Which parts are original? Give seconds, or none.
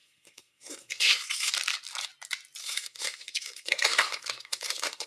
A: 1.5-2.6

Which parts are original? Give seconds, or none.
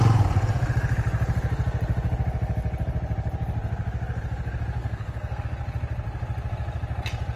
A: 0.0-4.8; 5.4-7.4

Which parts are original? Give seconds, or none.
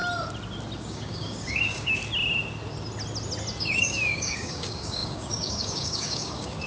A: 0.0-0.8; 2.0-3.6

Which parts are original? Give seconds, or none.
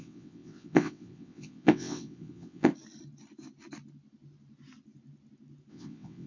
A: 2.7-5.7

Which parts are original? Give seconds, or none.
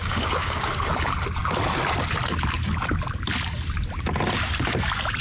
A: 0.7-5.2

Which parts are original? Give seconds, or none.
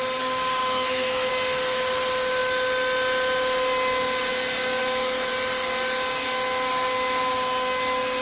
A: 0.0-0.6; 1.3-4.8; 5.3-8.2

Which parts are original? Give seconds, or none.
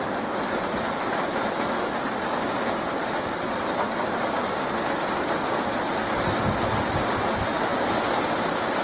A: 6.0-6.5; 7.7-8.8